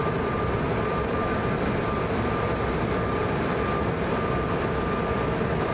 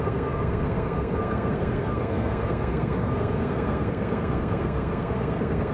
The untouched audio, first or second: first